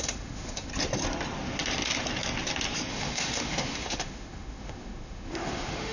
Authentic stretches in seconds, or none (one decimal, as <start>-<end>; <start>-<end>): 0.7-2.9